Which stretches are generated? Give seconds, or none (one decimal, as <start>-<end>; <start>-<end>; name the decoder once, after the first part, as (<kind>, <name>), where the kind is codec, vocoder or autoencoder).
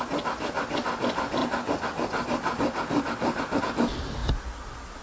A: none